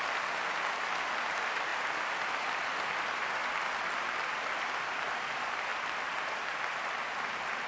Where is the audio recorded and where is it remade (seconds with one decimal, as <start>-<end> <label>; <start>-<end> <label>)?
0.0-1.7 remade; 1.7-2.4 recorded; 2.4-5.7 remade; 5.7-7.3 recorded; 7.3-7.7 remade